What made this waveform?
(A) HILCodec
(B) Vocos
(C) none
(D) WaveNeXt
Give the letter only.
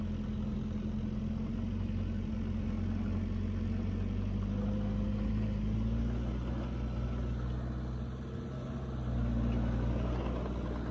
C